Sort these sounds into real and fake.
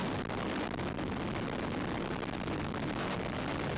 real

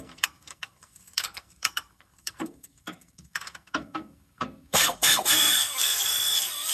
fake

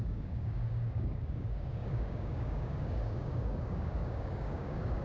fake